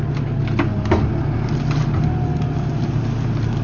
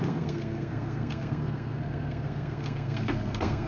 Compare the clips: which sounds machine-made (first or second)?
second